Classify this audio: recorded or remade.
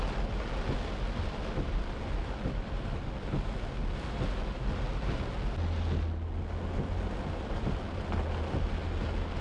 recorded